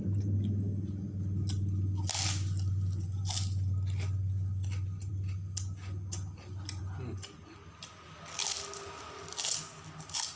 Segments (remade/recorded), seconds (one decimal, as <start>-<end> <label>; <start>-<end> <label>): 0.0-10.4 recorded